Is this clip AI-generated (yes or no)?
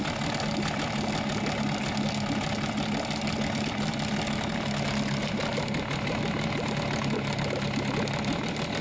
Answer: no